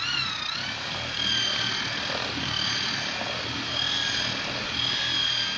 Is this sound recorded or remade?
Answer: recorded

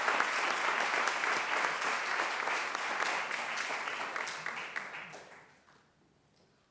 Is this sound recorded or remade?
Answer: recorded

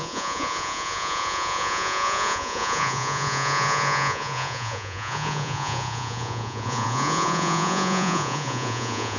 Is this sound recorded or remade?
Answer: remade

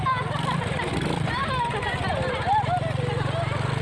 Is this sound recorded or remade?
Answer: recorded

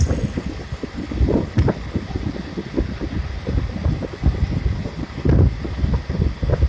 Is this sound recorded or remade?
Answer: recorded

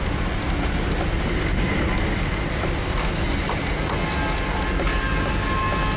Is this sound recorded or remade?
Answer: recorded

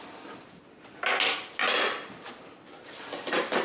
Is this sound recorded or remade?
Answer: recorded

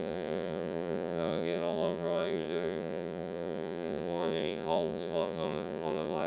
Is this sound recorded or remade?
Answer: remade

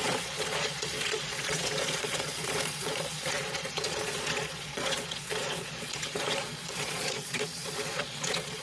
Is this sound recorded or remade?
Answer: remade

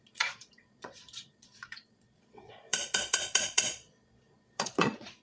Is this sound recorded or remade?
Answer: remade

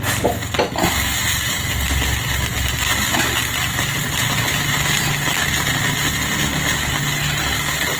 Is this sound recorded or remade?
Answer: recorded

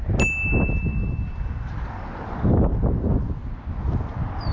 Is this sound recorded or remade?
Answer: recorded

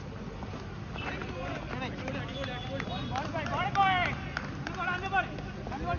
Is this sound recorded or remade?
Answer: recorded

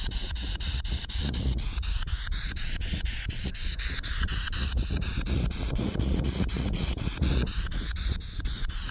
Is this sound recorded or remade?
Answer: remade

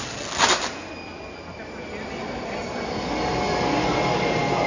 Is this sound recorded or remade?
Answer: recorded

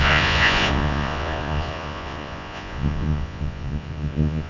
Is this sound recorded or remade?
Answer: remade